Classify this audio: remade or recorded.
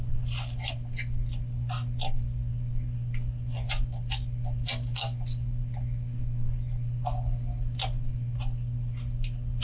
recorded